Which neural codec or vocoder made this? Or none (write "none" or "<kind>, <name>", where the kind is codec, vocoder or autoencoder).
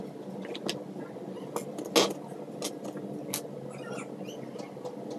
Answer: none